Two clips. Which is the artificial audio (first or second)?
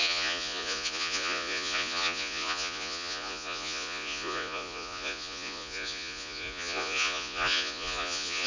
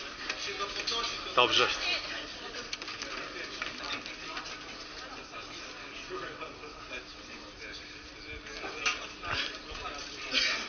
first